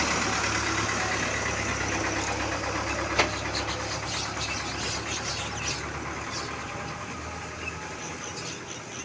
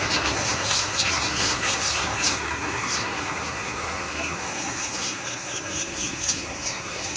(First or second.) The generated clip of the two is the second